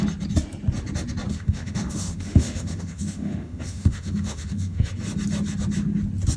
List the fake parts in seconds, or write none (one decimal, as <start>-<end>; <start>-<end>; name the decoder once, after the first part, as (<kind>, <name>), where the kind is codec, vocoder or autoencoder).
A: 1.3-4.9 (autoencoder, DAC-VAE)

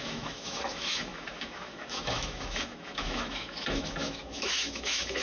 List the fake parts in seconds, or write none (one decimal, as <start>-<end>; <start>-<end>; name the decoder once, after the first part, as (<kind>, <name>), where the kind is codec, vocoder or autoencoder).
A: 0.0-5.2 (autoencoder, DAC-VAE)

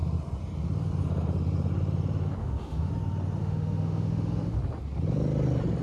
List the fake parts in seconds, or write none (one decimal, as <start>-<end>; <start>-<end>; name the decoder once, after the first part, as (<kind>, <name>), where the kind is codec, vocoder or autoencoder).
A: 2.4-2.9 (autoencoder, DAC-VAE); 3.4-4.6

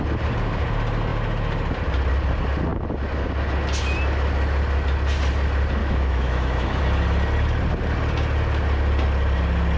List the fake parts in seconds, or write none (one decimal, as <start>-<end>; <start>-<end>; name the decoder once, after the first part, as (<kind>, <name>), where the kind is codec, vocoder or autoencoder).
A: 5.8-6.8 (autoencoder, DAC-VAE)

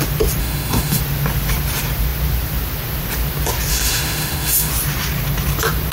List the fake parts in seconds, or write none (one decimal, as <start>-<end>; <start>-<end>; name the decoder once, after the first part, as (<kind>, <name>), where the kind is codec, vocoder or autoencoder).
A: 0.4-1.0 (autoencoder, DAC-VAE); 3.7-4.7

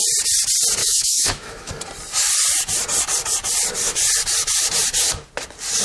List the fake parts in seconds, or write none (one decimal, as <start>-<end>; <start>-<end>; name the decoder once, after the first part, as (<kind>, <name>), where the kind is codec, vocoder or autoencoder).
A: 0.8-1.7 (autoencoder, DAC-VAE)